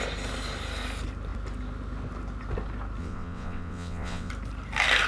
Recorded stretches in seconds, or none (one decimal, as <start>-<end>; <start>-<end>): 0.0-3.0; 4.3-5.1

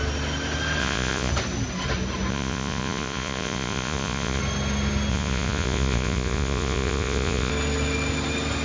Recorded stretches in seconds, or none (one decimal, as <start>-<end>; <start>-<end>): 0.0-0.8; 1.3-2.3; 4.4-5.1; 7.5-8.6

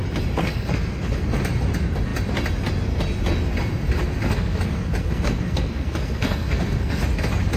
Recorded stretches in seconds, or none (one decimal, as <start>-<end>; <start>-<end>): 0.0-0.4; 1.4-4.2; 7.0-7.6

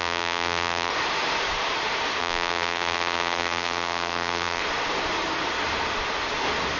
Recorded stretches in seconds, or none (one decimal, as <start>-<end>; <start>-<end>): 0.9-2.2; 4.6-6.8

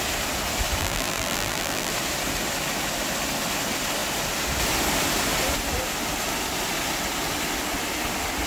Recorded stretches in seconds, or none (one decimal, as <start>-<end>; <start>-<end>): 0.0-0.8; 1.9-8.5

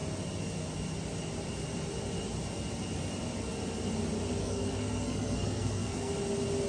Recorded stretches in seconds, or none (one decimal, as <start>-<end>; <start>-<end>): 0.0-4.4; 6.1-6.7

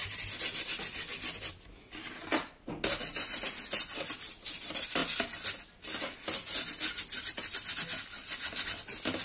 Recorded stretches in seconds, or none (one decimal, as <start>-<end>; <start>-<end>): 0.0-9.2